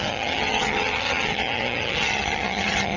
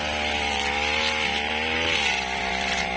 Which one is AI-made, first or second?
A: first